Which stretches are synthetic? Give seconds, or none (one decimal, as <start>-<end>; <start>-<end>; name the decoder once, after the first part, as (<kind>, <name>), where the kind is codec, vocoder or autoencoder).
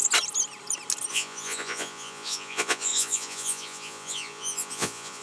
1.1-5.2 (vocoder, Vocos)